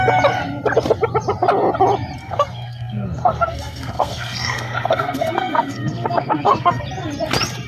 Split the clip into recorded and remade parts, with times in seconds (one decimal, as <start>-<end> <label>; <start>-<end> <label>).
0.0-2.2 recorded; 2.2-6.8 remade; 6.8-7.7 recorded